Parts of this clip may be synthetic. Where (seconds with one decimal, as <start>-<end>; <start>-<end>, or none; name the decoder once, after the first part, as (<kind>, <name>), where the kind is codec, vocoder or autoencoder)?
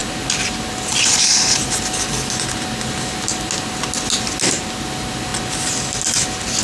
none